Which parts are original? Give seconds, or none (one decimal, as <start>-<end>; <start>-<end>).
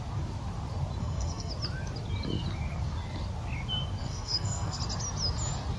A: 0.0-1.0; 1.5-4.0; 4.8-5.8